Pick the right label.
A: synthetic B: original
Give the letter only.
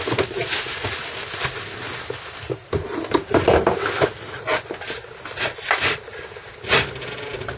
B